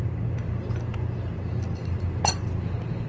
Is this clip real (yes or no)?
yes